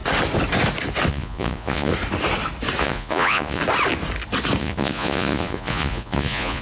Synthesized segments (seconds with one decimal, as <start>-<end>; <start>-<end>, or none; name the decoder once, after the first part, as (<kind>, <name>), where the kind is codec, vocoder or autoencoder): 1.1-1.9 (vocoder, Vocos); 2.8-3.6; 4.6-6.6